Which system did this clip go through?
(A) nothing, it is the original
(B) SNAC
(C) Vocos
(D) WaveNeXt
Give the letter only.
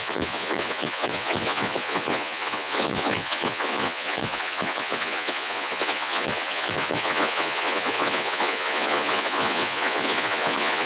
C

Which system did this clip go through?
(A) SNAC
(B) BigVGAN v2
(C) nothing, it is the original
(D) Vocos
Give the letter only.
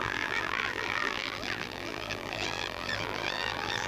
B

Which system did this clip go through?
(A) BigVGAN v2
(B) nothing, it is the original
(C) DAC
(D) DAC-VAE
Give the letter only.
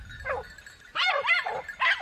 A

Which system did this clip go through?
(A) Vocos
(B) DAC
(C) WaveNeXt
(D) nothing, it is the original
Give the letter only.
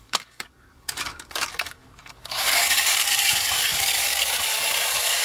B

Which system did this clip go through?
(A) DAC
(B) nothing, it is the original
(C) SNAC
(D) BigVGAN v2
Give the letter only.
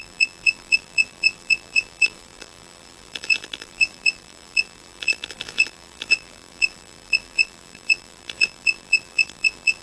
D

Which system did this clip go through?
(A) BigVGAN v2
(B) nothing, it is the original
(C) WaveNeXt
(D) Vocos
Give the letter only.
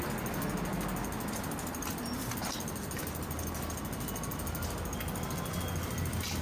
B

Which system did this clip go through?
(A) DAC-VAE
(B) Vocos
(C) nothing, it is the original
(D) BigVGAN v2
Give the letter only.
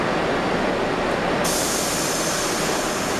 C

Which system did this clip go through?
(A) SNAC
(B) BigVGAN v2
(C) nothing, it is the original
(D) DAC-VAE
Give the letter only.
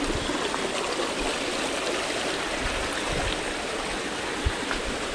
C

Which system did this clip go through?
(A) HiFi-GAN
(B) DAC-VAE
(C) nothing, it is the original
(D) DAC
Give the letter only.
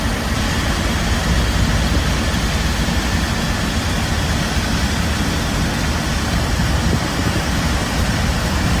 C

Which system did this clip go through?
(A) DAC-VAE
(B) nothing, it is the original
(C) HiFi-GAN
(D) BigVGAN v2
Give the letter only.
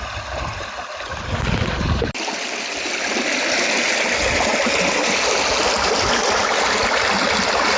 B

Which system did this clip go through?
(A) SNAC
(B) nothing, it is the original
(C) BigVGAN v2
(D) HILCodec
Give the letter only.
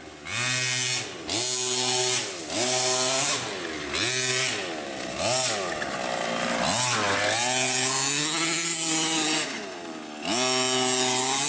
B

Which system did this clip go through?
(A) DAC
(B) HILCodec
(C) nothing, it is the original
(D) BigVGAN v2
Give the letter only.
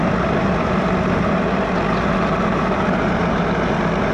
D